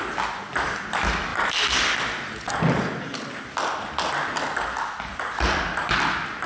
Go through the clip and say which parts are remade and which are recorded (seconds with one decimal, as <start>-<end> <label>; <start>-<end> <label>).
0.0-6.5 recorded